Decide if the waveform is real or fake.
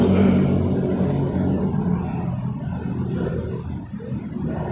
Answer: real